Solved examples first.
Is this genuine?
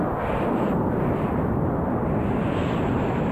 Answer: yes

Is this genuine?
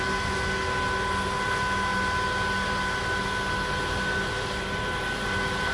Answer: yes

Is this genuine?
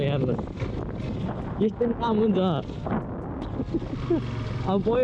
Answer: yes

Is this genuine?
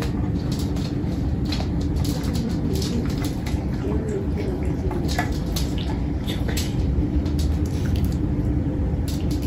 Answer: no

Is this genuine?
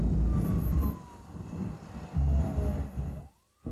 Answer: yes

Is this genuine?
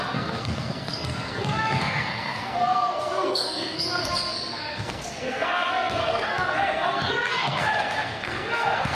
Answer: no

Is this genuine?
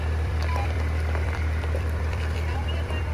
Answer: no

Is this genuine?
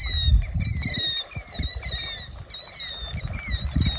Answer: yes